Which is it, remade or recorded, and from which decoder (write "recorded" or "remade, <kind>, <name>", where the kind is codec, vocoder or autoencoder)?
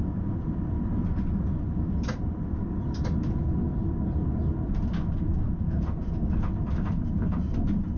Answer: recorded